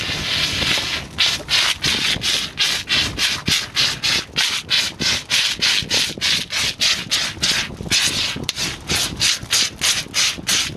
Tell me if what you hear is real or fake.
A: real